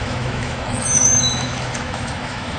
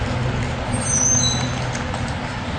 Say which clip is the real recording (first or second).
second